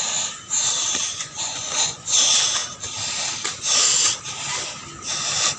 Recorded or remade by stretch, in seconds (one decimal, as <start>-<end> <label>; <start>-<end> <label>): 0.0-1.1 recorded; 1.1-2.1 remade; 2.1-5.6 recorded

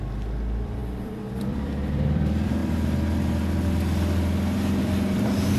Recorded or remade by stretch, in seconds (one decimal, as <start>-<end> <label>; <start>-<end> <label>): 0.0-2.6 remade; 2.6-4.8 recorded; 4.8-5.6 remade

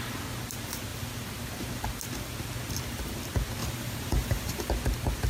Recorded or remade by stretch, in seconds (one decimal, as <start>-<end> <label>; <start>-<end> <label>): 0.0-3.6 recorded; 3.6-4.7 remade; 4.7-5.3 recorded

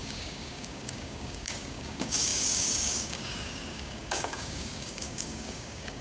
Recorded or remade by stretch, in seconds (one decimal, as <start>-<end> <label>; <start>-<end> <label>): 0.0-6.0 remade

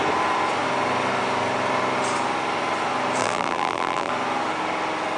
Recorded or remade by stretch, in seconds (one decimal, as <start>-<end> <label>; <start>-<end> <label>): 0.0-3.2 recorded; 3.2-4.1 remade; 4.1-5.2 recorded

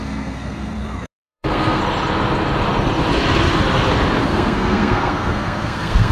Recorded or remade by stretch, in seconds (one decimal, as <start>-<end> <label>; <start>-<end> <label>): 0.0-1.8 remade; 1.8-4.2 recorded; 4.2-6.1 remade